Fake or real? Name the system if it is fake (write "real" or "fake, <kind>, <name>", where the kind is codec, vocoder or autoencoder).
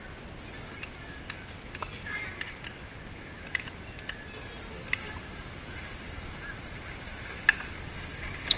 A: real